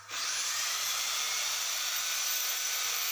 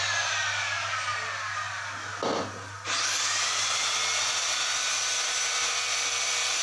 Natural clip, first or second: second